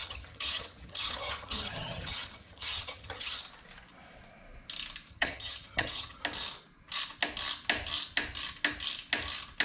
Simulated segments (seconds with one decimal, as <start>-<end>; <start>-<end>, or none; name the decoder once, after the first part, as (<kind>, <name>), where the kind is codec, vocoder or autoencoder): 0.0-3.4 (vocoder, HiFi-GAN); 5.1-6.2